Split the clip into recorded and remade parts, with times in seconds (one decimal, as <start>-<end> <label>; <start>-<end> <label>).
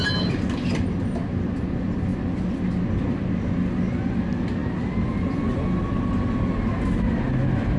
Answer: 0.0-7.8 recorded